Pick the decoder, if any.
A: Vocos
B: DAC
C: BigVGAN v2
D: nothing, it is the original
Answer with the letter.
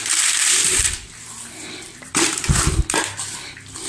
C